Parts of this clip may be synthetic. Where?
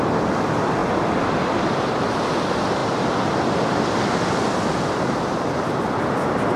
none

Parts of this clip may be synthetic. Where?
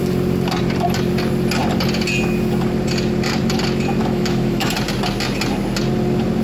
4.0-4.7 (autoencoder, DAC-VAE)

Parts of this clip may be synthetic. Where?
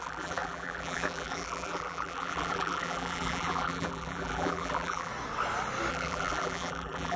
0.0-5.1 (vocoder, BigVGAN v2); 5.9-7.2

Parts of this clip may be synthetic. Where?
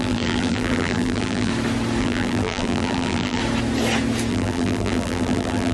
0.0-1.5 (vocoder, BigVGAN v2); 2.0-3.4; 4.3-5.7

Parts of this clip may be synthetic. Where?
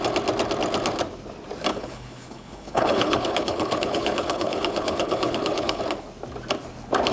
1.7-5.8 (codec, HILCodec)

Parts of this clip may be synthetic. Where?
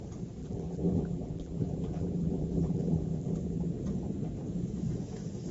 0.4-3.7 (vocoder, BigVGAN v2)